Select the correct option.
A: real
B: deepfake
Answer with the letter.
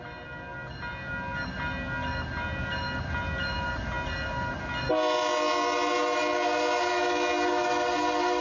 A